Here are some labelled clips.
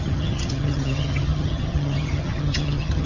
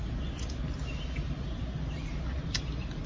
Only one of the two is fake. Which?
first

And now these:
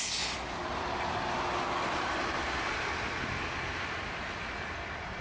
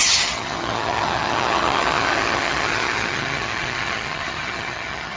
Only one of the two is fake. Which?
second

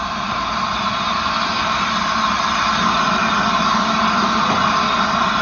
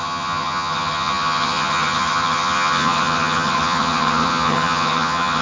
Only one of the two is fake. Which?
second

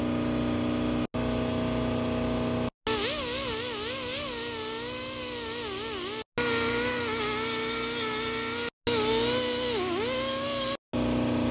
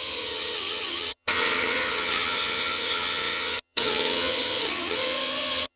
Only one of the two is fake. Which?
second